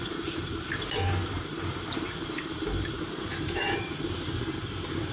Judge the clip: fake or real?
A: fake